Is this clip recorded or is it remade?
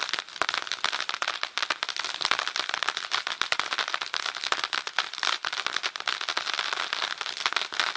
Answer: recorded